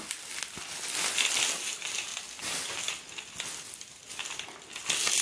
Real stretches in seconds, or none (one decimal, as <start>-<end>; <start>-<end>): 0.0-5.2